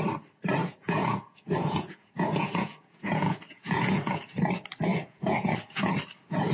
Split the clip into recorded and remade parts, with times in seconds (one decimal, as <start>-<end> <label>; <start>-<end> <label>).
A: 0.0-0.6 recorded; 0.6-4.5 remade; 4.5-4.9 recorded; 4.9-5.9 remade; 5.9-6.5 recorded